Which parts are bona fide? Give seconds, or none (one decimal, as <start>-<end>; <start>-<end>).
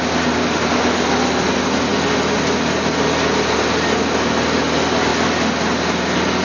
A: 0.0-6.4